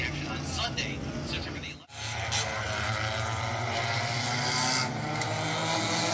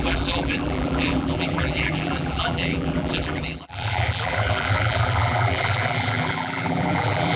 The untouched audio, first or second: first